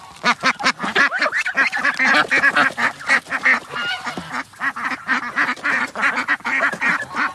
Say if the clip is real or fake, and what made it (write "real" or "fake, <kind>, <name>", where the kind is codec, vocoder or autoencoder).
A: real